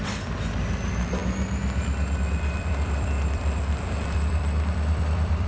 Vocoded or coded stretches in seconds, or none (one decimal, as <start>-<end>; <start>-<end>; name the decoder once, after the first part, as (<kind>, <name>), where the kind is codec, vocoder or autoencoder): 0.0-1.2 (vocoder, BigVGAN v2); 2.2-5.5

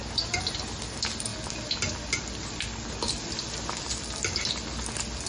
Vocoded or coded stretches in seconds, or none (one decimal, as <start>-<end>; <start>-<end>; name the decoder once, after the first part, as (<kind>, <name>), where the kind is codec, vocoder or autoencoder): none

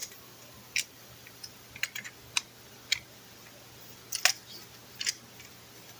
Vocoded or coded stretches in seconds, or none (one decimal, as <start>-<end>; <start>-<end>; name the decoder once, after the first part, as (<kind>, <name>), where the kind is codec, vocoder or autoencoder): 0.0-1.7 (vocoder, BigVGAN v2)

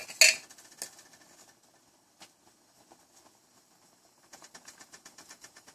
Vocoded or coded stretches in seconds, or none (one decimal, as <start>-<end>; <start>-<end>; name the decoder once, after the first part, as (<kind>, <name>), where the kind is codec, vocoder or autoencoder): 3.4-5.7 (vocoder, BigVGAN v2)

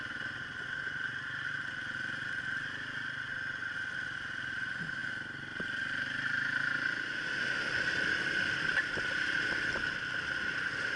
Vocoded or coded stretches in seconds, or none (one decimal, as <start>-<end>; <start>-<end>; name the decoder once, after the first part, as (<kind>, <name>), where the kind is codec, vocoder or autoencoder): none